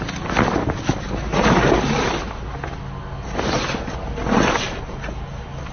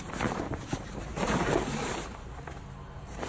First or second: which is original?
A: first